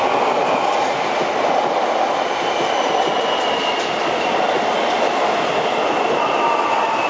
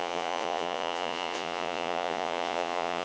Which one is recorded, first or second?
first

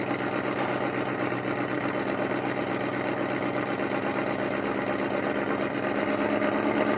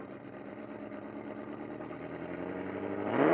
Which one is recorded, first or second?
first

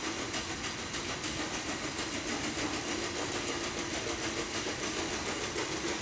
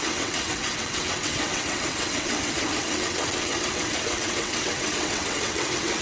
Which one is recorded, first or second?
first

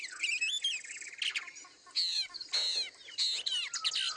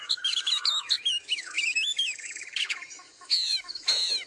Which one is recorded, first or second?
first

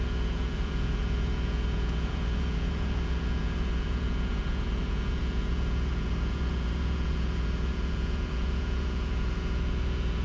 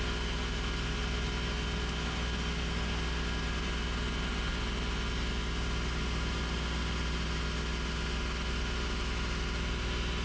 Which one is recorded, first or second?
second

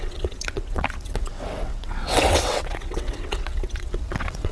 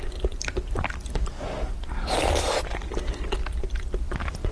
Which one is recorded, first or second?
second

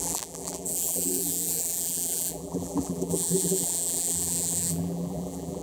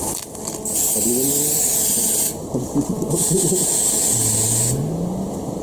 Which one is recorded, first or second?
second